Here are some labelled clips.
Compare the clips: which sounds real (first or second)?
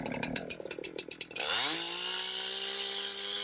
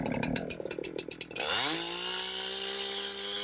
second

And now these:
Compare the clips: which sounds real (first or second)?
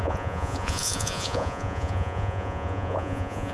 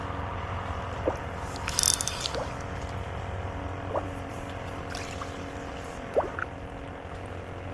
second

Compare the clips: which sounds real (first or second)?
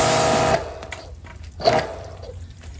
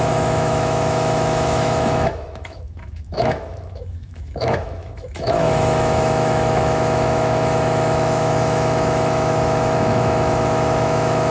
first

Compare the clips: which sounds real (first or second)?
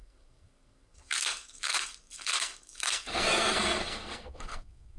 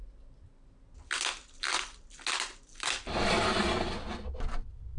second